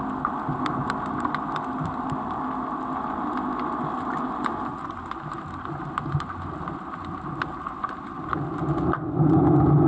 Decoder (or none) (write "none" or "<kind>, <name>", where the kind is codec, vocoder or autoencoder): none